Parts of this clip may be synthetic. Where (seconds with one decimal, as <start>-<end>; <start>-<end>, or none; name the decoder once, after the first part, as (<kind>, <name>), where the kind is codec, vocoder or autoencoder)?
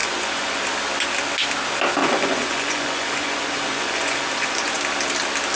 0.0-0.6 (vocoder, Vocos); 2.0-4.8